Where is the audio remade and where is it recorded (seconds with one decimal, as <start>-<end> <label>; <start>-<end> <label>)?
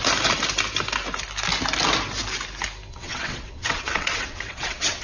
0.0-2.9 recorded; 2.9-5.0 remade